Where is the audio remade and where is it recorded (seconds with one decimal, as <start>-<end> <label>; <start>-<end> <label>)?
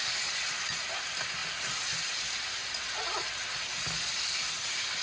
0.0-5.0 recorded